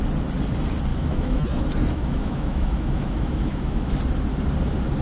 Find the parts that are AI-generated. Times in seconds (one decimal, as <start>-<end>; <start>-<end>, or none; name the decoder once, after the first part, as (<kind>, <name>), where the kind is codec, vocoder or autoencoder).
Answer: 0.9-3.9 (autoencoder, DAC-VAE)

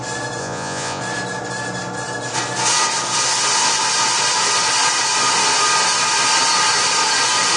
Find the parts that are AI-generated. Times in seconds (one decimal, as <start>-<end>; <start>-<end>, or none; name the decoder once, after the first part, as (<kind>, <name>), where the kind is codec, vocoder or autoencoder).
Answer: 0.4-1.0 (vocoder, Vocos)

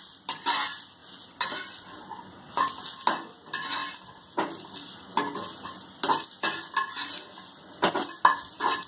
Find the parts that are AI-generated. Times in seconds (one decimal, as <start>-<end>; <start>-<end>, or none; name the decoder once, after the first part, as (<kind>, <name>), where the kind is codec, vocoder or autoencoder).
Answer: none

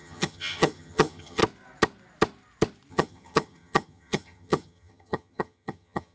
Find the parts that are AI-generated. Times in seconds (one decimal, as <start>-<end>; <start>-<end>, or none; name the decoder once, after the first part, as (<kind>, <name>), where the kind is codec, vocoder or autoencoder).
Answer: 0.0-1.4 (vocoder, HiFi-GAN); 2.9-6.1

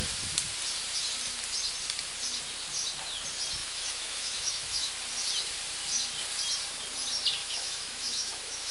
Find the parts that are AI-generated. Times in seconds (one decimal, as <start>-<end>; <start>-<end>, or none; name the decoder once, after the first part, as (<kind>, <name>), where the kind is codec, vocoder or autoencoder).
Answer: 3.6-4.9 (autoencoder, DAC-VAE); 7.4-8.7

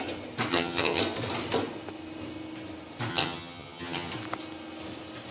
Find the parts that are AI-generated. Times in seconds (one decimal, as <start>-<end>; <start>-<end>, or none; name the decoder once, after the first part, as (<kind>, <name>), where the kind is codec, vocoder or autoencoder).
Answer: 0.5-1.0 (vocoder, HiFi-GAN); 3.1-4.1